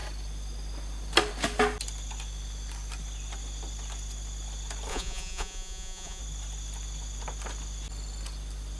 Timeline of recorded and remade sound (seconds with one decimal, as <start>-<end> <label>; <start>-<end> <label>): 0.0-4.9 recorded; 4.9-6.2 remade; 6.2-8.8 recorded